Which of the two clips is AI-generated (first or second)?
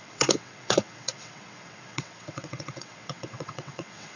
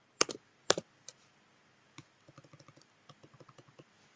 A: first